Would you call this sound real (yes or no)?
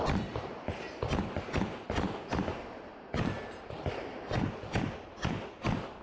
yes